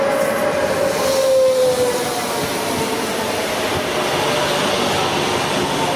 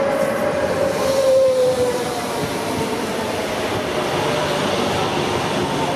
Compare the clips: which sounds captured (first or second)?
first